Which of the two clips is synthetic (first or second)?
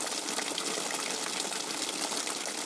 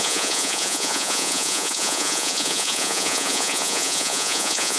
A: second